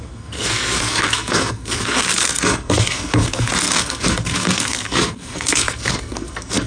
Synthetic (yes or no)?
yes